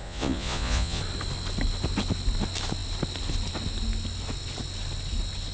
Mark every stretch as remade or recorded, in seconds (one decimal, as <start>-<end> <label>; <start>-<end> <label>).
0.0-1.0 remade; 1.0-5.5 recorded

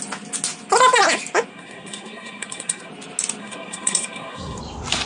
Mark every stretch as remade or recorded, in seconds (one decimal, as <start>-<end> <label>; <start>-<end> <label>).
0.0-1.5 recorded; 1.5-2.9 remade; 2.9-3.4 recorded; 3.4-4.6 remade; 4.6-5.1 recorded

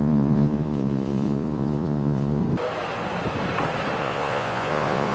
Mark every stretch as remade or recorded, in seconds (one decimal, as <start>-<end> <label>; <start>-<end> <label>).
0.0-2.4 remade; 2.4-4.0 recorded; 4.0-5.1 remade

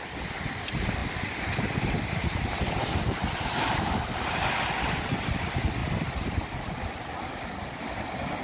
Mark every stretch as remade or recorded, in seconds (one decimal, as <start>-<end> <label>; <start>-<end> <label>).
0.0-5.8 recorded; 5.8-6.9 remade; 6.9-8.4 recorded